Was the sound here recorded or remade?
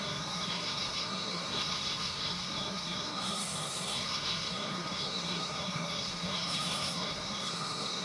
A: remade